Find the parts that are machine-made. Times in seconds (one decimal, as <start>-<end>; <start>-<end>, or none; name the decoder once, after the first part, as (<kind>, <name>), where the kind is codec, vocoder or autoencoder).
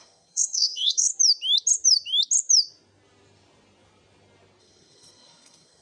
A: 0.0-1.1 (codec, SNAC); 4.6-5.8